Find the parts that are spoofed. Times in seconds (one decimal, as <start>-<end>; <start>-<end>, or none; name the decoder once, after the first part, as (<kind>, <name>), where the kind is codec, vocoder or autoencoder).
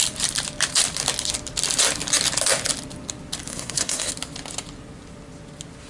3.5-4.1 (codec, SNAC)